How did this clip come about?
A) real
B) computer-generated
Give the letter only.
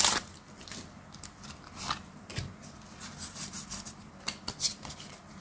A